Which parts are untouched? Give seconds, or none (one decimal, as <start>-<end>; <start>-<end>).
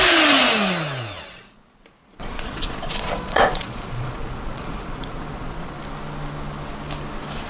0.0-2.0; 5.8-7.5